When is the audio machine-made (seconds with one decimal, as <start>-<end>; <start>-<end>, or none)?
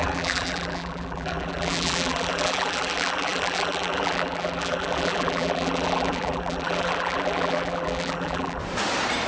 0.0-8.6